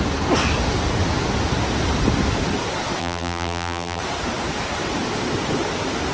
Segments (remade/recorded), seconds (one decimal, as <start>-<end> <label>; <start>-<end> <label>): 0.0-3.0 recorded; 3.0-4.0 remade; 4.0-6.1 recorded